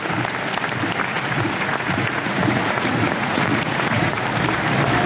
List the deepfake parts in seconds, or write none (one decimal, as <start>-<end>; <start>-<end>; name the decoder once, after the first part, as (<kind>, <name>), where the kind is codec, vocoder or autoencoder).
1.1-4.2 (vocoder, Vocos)